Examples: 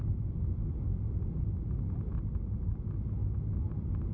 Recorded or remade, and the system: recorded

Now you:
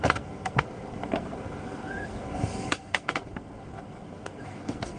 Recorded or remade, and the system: remade, codec, SNAC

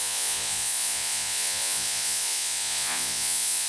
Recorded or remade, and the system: remade, vocoder, Vocos